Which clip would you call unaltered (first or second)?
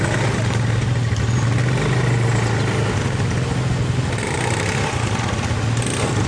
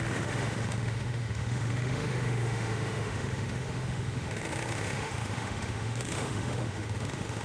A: first